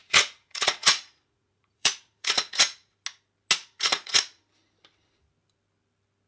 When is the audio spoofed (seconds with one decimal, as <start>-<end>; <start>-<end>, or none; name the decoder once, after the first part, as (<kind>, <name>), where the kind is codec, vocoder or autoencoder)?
0.0-2.9 (vocoder, Vocos); 3.6-4.4